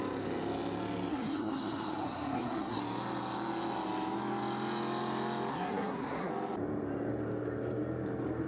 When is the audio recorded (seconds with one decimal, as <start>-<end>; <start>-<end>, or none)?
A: 0.0-1.1; 2.8-5.5; 6.3-8.5